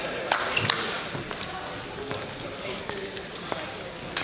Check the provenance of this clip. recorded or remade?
recorded